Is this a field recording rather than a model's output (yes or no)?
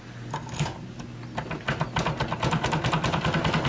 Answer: yes